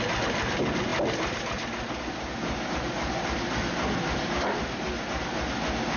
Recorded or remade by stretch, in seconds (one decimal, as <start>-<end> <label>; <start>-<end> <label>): 0.0-6.0 recorded